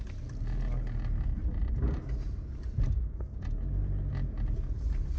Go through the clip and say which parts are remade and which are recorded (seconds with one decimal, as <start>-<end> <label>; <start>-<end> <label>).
0.0-5.2 recorded